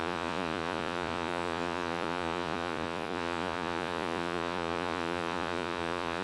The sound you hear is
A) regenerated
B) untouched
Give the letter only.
A